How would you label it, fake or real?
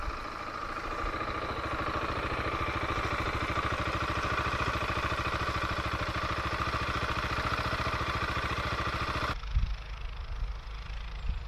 real